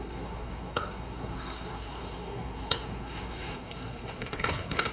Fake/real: fake